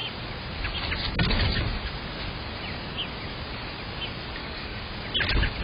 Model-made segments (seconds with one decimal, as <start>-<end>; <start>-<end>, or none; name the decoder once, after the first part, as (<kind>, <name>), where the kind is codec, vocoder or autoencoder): 4.4-4.9 (codec, DAC)